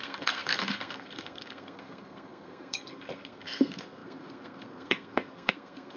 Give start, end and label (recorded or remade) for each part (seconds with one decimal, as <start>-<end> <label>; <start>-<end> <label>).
0.0-6.0 remade